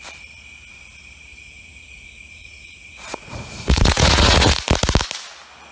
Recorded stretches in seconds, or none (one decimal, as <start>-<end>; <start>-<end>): 0.0-1.3; 4.7-5.7